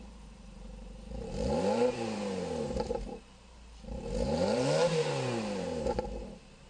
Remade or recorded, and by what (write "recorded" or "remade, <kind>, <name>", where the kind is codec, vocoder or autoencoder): remade, vocoder, BigVGAN v2